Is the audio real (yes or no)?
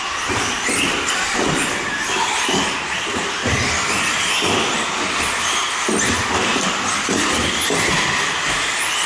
yes